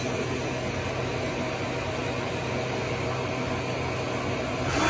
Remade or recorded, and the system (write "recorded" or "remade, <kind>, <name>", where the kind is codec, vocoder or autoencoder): recorded